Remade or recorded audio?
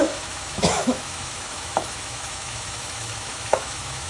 remade